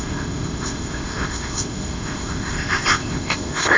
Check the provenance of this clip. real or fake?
fake